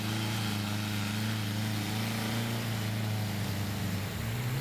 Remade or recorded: recorded